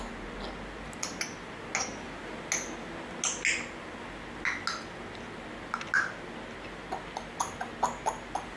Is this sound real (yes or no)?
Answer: yes